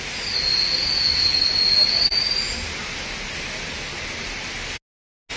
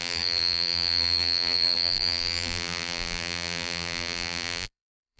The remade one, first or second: second